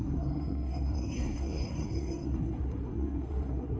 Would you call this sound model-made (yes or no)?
yes